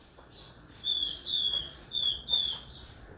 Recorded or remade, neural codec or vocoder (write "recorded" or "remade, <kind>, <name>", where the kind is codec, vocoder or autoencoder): remade, vocoder, Vocos